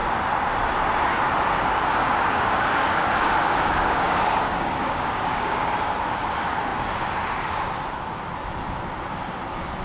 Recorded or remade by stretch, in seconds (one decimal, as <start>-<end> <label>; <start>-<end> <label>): 0.0-2.0 recorded; 2.0-5.7 remade; 5.7-9.8 recorded